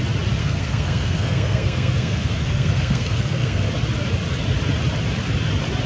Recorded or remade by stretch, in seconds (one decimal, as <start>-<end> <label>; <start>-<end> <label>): 0.0-0.4 recorded; 0.4-3.7 remade; 3.7-5.9 recorded